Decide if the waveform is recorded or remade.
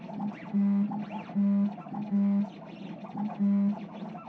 recorded